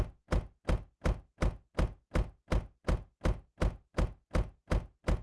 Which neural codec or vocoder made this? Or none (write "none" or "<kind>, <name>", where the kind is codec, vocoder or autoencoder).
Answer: none